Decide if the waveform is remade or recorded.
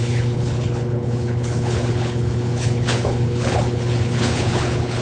remade